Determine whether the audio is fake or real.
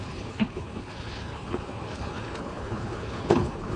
fake